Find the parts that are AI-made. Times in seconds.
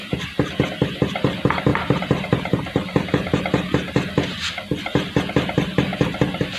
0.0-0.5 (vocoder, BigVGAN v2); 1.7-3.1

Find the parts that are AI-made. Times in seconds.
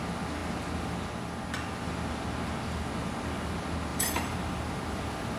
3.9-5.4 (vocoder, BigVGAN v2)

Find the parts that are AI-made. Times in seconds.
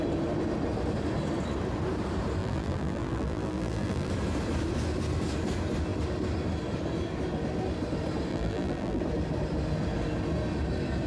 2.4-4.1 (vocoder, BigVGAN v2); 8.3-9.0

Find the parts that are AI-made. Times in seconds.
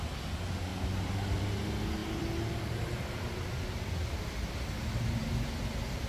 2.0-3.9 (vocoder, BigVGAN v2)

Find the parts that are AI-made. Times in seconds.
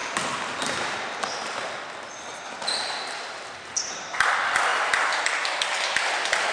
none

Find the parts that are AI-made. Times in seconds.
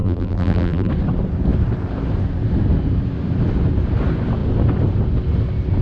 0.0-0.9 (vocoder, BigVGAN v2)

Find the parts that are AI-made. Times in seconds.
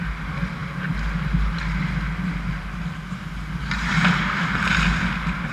none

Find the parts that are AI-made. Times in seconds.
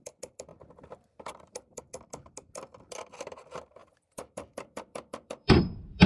0.5-1.8 (vocoder, BigVGAN v2); 3.8-6.1